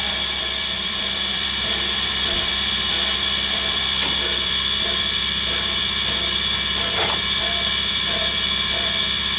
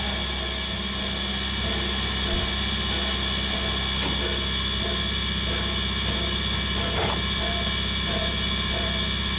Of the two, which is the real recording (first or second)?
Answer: second